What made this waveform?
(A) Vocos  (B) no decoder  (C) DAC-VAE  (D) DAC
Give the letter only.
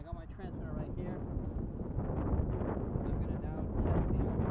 B